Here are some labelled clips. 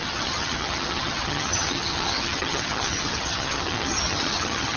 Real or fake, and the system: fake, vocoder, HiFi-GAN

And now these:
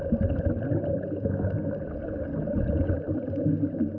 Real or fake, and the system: real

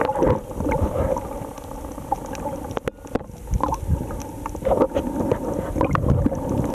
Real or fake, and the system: real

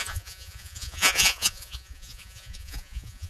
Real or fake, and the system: fake, vocoder, Vocos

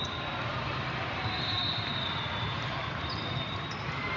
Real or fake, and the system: fake, vocoder, BigVGAN v2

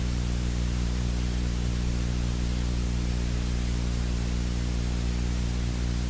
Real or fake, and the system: fake, vocoder, BigVGAN v2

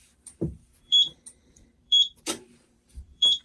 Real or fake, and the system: fake, vocoder, BigVGAN v2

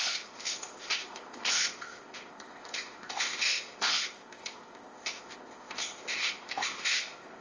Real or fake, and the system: fake, codec, ZipCodec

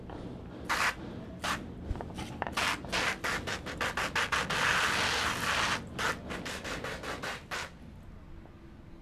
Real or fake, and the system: real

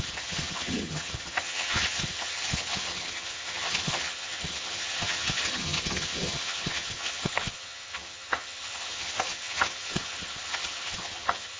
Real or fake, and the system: fake, vocoder, HiFi-GAN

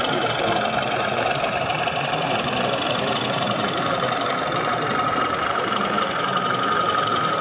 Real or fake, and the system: fake, vocoder, BigVGAN v2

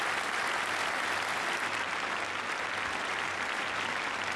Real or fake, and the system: real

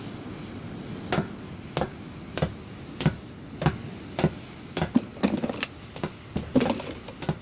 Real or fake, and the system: real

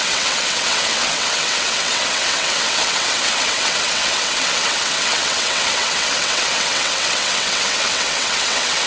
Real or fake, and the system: fake, vocoder, WaveNeXt